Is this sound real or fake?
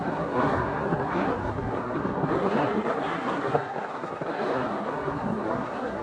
fake